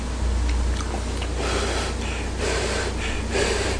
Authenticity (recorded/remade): recorded